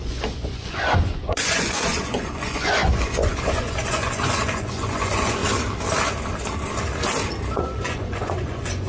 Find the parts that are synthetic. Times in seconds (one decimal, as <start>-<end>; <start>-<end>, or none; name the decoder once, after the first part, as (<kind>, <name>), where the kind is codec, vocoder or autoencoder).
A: 0.0-5.4 (vocoder, Vocos); 7.5-8.9